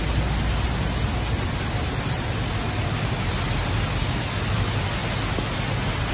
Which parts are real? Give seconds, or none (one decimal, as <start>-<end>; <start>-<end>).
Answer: 0.0-6.1